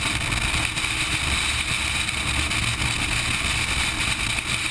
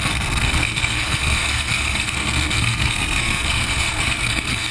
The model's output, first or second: second